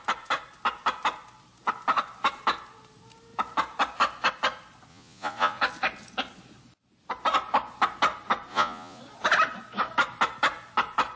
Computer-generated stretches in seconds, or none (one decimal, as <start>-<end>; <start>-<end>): 4.9-5.6; 8.5-9.0